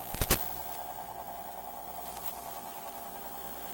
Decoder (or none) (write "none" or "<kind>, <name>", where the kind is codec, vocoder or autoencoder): none